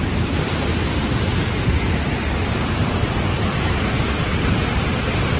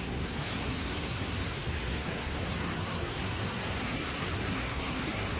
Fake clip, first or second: second